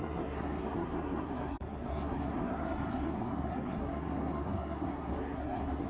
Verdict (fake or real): fake